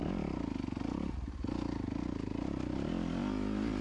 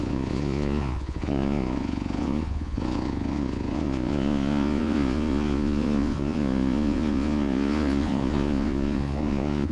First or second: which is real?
first